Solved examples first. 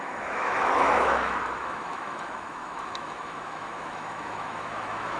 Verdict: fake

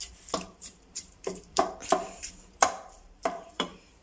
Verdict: fake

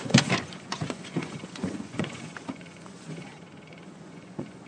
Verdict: fake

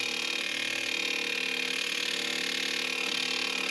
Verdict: real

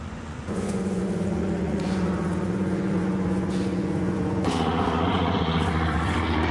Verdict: fake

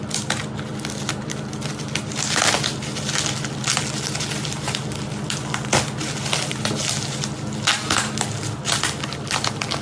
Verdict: real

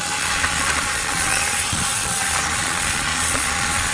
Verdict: fake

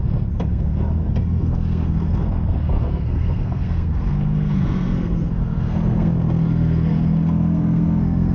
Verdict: fake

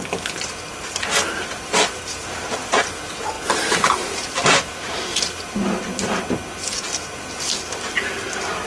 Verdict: real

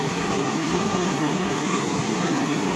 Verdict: fake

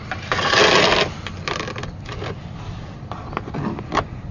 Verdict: real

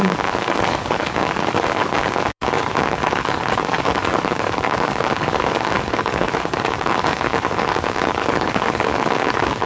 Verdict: fake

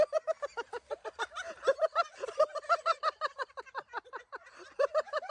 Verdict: fake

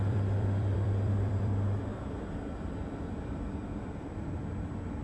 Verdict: fake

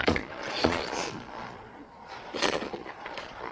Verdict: fake